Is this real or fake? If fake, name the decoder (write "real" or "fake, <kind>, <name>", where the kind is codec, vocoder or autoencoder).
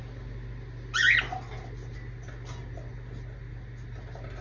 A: real